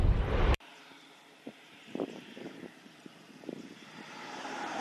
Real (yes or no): no